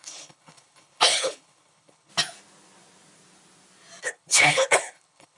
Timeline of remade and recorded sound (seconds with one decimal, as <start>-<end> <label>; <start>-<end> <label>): 0.0-2.1 remade; 2.1-4.0 recorded; 4.0-5.4 remade